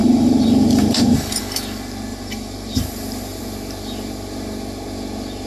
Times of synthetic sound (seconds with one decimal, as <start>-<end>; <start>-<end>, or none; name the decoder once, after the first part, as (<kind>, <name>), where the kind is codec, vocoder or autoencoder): 0.0-1.4 (vocoder, BigVGAN v2); 2.1-3.4